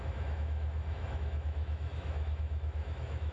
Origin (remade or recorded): remade